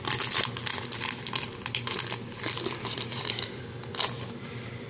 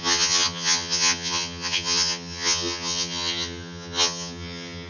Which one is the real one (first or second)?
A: first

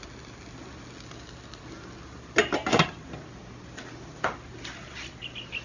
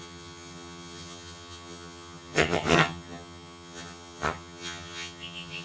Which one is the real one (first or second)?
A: first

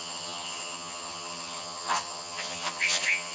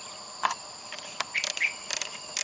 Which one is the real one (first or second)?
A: second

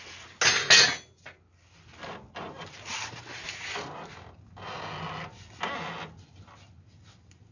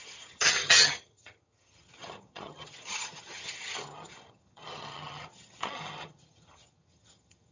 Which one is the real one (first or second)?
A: first